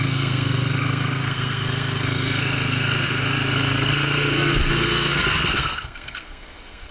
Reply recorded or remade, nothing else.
remade